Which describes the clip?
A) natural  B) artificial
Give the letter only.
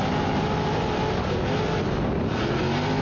A